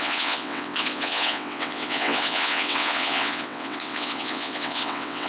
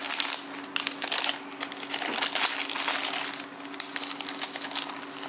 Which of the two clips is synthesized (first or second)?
first